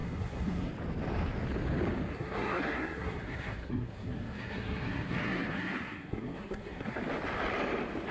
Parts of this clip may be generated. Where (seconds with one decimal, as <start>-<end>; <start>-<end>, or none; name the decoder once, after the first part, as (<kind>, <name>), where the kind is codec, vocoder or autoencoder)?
0.0-0.7 (codec, SNAC); 2.1-7.0